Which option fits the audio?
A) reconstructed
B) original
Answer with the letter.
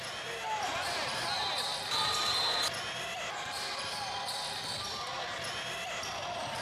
B